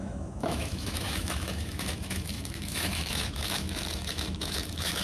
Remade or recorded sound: remade